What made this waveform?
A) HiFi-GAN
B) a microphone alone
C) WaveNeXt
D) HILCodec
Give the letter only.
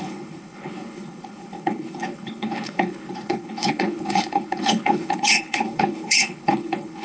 D